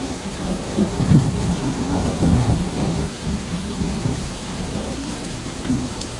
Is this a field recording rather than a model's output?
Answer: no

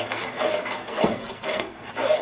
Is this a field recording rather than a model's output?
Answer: no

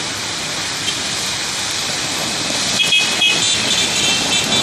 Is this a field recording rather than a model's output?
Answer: yes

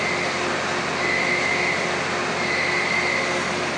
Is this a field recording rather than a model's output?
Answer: yes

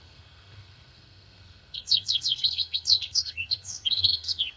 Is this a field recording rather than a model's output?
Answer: no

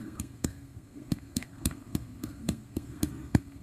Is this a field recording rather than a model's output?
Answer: no